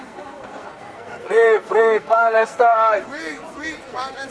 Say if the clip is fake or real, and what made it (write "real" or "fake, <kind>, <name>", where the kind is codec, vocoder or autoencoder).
fake, codec, SNAC